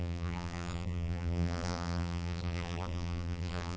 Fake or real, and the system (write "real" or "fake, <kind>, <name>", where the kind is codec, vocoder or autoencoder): fake, vocoder, BigVGAN v2